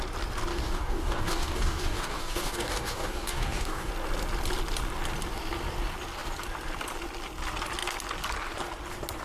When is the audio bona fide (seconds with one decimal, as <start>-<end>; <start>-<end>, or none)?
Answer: 0.0-0.5; 3.9-9.2